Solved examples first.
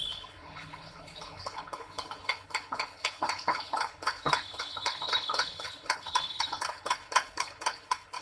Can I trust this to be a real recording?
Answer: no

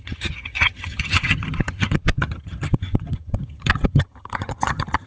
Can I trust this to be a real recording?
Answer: no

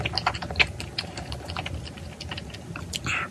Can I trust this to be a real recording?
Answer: yes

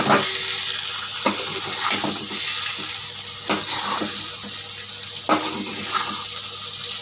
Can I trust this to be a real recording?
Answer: yes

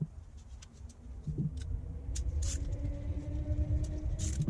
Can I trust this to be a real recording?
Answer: yes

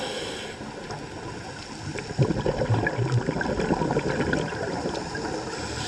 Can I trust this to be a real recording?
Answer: yes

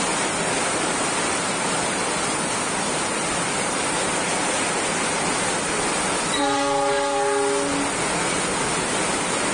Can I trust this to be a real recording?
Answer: yes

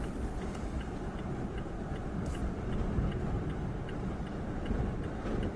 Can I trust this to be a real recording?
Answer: yes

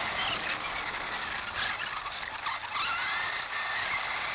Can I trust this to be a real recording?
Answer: yes